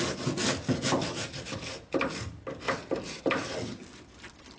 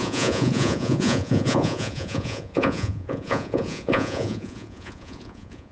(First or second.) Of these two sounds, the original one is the first